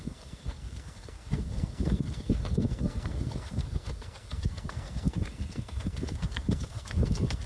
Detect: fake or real fake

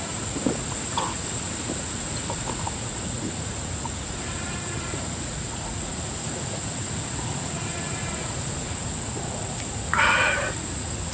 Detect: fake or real fake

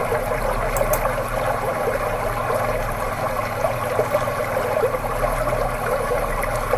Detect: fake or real real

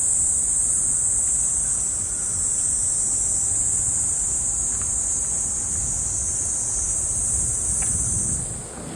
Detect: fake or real real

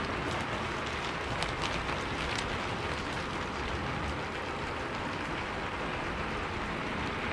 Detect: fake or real real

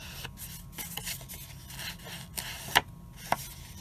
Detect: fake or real real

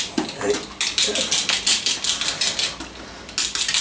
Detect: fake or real real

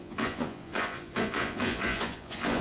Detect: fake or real fake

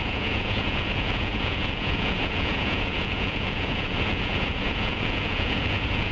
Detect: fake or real fake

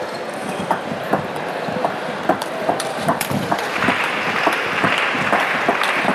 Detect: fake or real fake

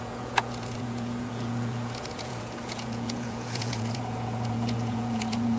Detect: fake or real fake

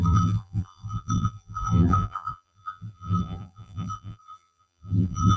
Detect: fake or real fake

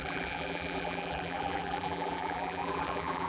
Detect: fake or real fake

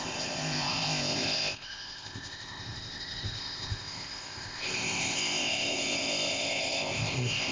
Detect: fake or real fake